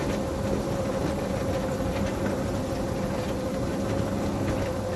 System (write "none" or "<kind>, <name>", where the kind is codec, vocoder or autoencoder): none